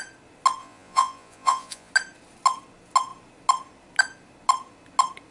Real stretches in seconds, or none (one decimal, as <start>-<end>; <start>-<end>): 0.0-0.6; 1.9-5.3

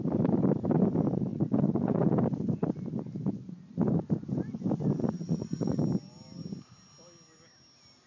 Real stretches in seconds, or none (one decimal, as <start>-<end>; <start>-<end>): 0.0-1.3; 2.2-5.0; 5.8-8.1

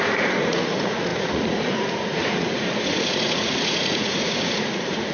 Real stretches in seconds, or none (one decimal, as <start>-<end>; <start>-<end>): none

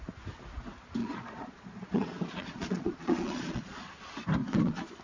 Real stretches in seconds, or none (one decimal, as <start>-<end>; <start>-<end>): 0.0-1.0; 4.0-4.4

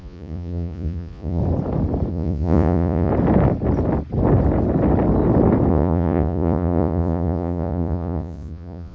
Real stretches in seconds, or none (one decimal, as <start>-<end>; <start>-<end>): 1.4-2.1; 3.1-5.7

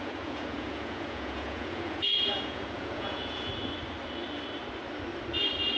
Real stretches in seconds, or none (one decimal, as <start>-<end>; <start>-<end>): 3.5-5.8